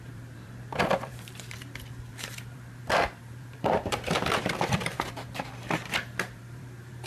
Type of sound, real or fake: fake